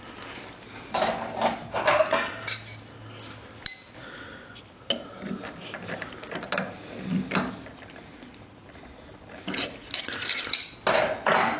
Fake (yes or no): no